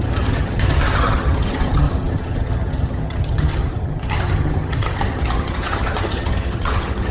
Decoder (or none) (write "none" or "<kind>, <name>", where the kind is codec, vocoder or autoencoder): vocoder, HiFi-GAN